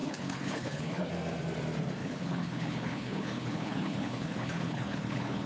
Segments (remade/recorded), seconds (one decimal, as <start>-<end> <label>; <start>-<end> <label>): 0.0-1.1 remade; 1.1-2.0 recorded; 2.0-5.5 remade